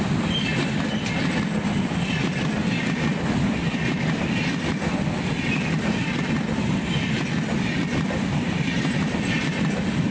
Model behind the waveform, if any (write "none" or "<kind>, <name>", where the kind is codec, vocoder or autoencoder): none